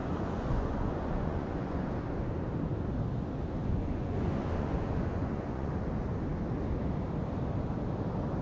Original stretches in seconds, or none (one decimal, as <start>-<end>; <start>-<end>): 1.9-3.6; 5.7-8.4